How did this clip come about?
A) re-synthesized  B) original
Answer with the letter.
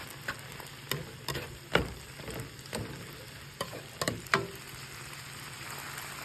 B